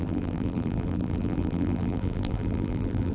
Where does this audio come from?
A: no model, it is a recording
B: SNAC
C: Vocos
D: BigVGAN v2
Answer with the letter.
D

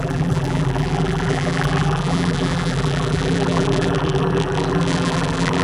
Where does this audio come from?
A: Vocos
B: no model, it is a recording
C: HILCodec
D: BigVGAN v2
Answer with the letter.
D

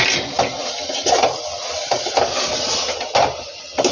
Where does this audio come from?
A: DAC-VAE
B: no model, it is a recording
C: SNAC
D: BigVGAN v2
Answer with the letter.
B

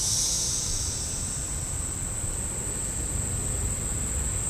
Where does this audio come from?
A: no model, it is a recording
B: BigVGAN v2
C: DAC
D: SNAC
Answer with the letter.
B